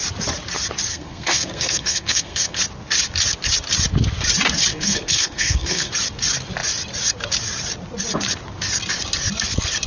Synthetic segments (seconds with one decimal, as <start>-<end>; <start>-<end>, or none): 0.9-2.6; 4.7-5.9